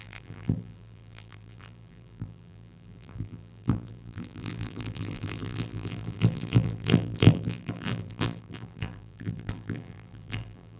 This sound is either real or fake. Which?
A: fake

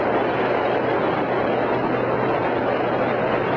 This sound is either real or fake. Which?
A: real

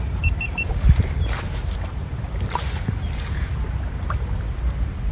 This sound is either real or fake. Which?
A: fake